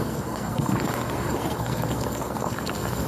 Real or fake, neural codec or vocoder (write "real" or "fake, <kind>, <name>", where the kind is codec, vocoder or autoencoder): fake, codec, SNAC